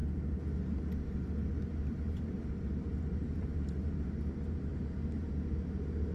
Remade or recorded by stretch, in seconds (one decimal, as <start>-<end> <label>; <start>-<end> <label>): 0.0-1.6 recorded; 1.6-5.3 remade; 5.3-6.1 recorded